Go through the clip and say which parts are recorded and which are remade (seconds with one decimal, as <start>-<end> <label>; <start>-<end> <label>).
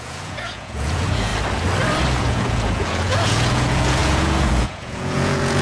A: 0.0-1.3 remade; 1.3-2.2 recorded; 2.2-5.6 remade